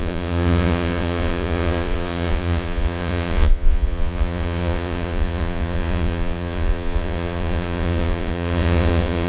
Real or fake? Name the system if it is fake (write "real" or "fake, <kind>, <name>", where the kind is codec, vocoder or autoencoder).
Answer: fake, vocoder, Vocos